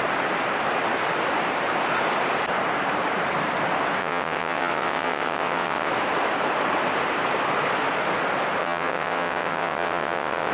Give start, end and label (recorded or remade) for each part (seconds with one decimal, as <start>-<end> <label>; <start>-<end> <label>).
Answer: 0.0-4.0 recorded; 4.0-5.9 remade; 5.9-8.6 recorded; 8.6-10.5 remade